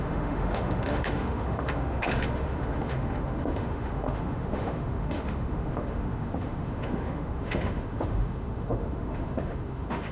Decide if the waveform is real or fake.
fake